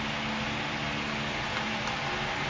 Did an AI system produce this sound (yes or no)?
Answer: no